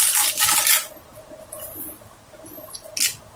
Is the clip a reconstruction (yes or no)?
no